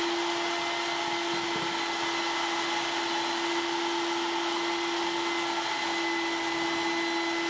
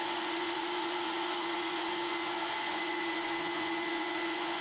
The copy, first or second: second